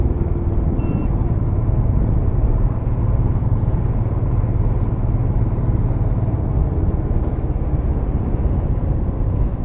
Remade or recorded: recorded